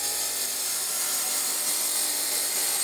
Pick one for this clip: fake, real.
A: real